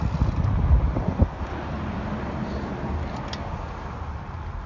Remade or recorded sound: recorded